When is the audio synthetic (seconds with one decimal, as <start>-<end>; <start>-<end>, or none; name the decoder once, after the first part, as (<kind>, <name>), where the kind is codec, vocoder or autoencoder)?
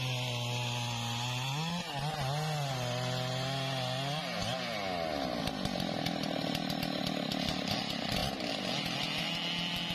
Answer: none